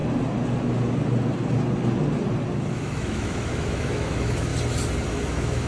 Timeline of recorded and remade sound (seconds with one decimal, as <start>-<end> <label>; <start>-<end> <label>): 0.0-2.7 recorded; 2.7-4.5 remade; 4.5-5.1 recorded; 5.1-5.7 remade